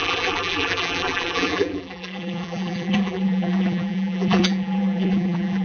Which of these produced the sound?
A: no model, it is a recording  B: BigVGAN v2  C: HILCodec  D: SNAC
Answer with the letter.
B